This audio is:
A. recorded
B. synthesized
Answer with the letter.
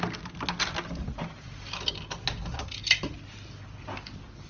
A